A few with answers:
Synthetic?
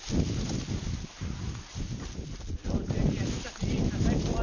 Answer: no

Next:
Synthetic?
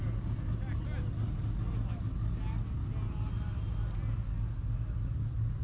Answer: no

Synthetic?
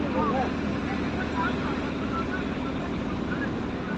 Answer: no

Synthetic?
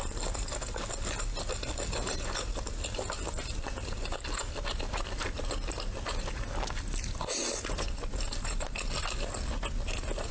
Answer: no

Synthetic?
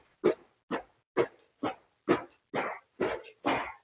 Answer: no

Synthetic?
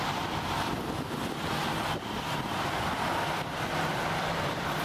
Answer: yes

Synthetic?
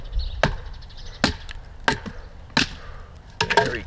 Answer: no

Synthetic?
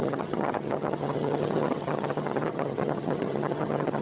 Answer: yes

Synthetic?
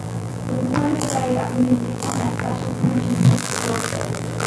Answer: yes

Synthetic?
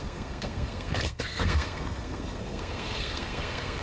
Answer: yes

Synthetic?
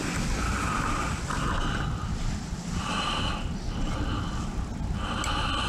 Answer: no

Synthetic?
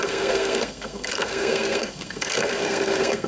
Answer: yes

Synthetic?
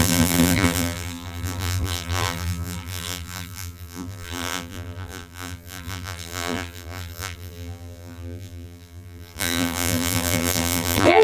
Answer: yes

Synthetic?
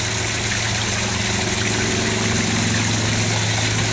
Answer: no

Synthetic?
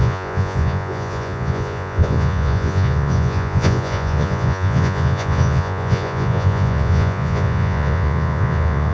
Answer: yes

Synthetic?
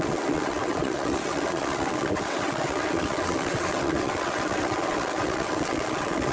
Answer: yes